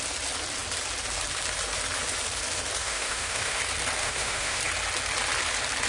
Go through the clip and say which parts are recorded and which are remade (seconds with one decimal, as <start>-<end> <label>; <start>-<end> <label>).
0.0-2.8 recorded; 2.8-3.6 remade; 3.6-4.0 recorded; 4.0-4.6 remade; 4.6-5.9 recorded